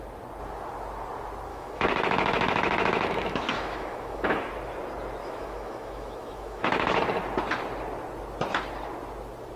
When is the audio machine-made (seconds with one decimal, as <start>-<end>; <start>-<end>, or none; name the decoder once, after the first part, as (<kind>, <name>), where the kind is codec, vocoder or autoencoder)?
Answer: 1.5-4.5 (autoencoder, DAC-VAE); 5.2-7.0